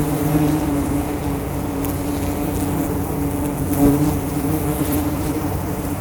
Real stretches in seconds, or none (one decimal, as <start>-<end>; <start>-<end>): 1.2-4.8